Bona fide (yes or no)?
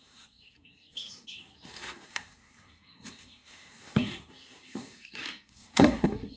no